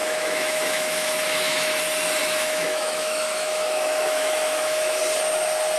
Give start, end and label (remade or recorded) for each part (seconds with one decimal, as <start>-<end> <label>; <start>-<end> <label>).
0.0-1.8 remade; 1.8-2.2 recorded; 2.2-5.0 remade; 5.0-5.8 recorded